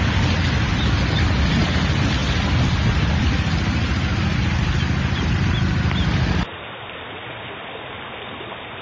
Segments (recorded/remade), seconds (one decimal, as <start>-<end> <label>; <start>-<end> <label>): 0.0-8.8 recorded